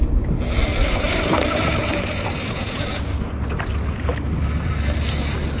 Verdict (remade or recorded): recorded